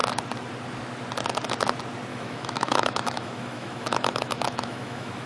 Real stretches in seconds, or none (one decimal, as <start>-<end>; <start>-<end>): 0.0-2.1